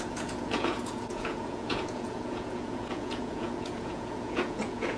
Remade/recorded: remade